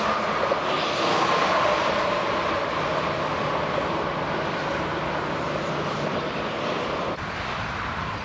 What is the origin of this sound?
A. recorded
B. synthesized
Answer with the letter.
A